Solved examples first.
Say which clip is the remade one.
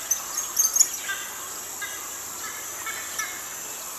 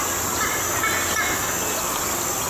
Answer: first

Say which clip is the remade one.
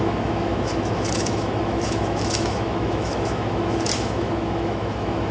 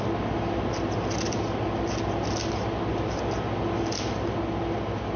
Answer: first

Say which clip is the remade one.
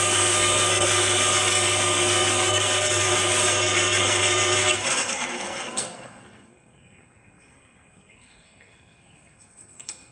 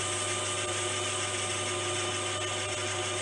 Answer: first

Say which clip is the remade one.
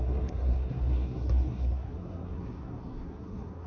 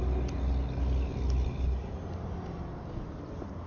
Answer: first